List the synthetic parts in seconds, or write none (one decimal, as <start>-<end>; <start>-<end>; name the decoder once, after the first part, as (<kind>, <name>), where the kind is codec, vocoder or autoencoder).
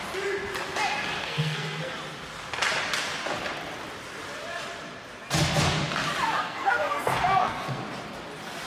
1.2-1.9 (codec, SNAC); 6.4-7.8